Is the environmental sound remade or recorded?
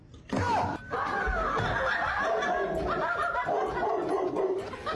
recorded